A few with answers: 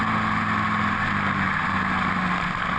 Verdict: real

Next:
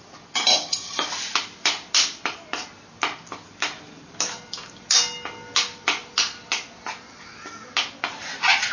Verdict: real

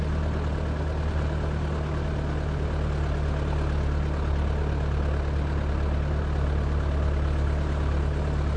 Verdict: real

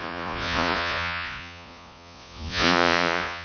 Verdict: fake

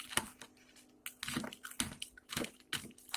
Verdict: real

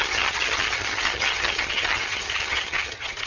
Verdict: fake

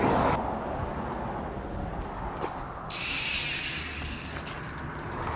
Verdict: real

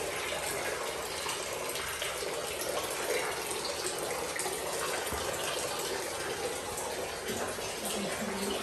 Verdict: real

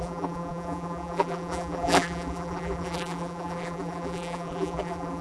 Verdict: fake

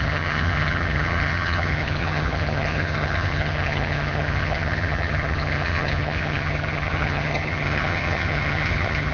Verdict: fake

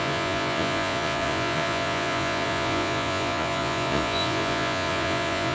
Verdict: fake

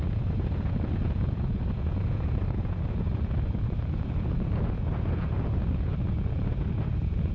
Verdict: fake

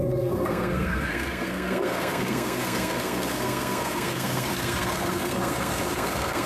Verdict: fake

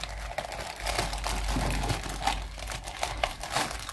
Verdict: real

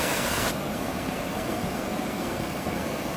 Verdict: fake